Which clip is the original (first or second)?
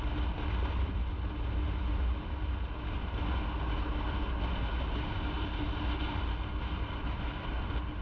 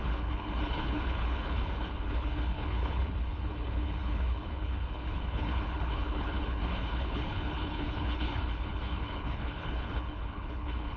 first